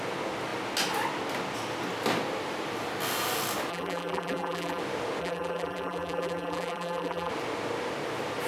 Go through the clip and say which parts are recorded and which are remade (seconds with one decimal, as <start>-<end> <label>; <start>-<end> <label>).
0.0-3.7 recorded; 3.7-4.8 remade; 4.8-5.2 recorded; 5.2-7.3 remade; 7.3-8.5 recorded